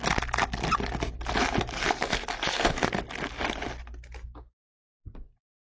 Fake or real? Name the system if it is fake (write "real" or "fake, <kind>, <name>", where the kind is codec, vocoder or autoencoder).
real